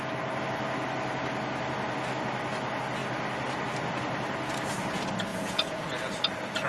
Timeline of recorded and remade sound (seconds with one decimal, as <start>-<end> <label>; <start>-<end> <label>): 0.0-5.3 recorded; 5.3-5.9 remade; 5.9-6.7 recorded